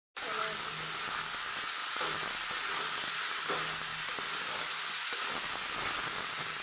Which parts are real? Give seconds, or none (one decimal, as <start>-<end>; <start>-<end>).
0.0-6.6